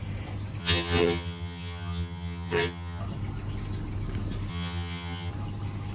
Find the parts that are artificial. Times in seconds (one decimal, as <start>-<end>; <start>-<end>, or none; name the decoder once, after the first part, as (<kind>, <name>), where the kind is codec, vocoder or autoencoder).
0.6-3.0 (vocoder, HiFi-GAN); 4.5-5.3